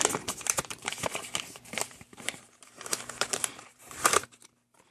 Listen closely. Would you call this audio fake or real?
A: fake